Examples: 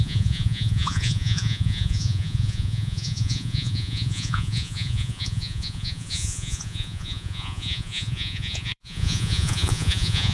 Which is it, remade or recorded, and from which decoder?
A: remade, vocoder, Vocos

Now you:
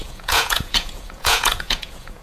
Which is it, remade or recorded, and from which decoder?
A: remade, vocoder, Vocos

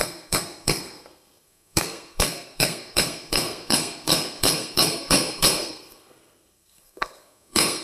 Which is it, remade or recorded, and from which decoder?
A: remade, codec, SNAC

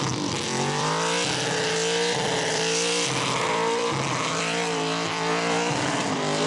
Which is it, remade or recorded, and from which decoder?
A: remade, vocoder, BigVGAN v2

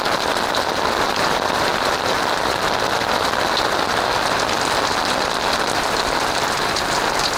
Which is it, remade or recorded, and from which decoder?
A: remade, vocoder, BigVGAN v2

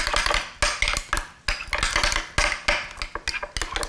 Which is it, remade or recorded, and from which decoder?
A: recorded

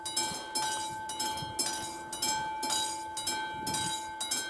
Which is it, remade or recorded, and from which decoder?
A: recorded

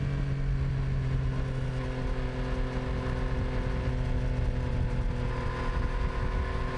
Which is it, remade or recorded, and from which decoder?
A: recorded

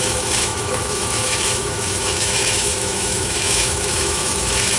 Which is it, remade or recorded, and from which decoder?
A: remade, autoencoder, DAC-VAE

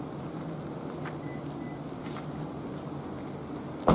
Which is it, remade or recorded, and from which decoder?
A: recorded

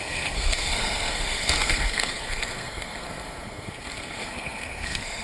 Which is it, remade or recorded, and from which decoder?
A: remade, codec, SNAC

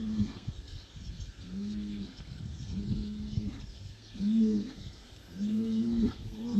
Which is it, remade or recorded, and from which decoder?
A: remade, codec, SNAC